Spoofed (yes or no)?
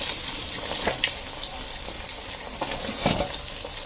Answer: no